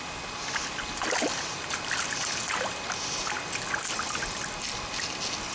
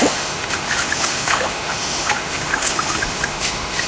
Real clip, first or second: first